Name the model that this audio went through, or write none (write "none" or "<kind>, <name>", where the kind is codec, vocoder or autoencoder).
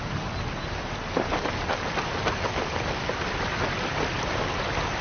none